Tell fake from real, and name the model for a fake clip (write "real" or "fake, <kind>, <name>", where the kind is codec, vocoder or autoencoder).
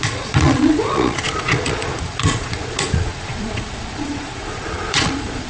fake, vocoder, Vocos